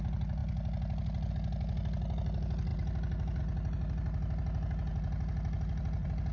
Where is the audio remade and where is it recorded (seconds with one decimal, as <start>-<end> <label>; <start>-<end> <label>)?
0.0-6.3 recorded